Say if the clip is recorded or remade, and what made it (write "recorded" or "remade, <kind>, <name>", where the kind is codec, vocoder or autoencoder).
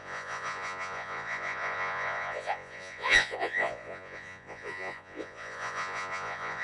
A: remade, vocoder, Vocos